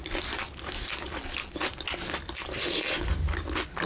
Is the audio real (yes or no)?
yes